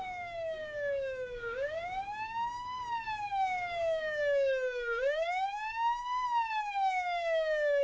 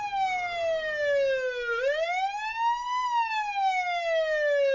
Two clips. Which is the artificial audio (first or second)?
first